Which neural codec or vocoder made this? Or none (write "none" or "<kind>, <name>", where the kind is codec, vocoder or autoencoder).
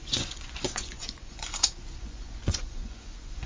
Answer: vocoder, Vocos